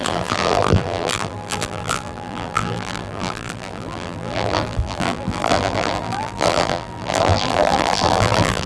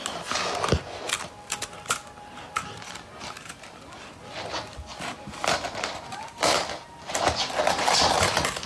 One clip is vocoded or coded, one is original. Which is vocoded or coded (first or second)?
first